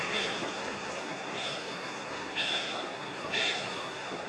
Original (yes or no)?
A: no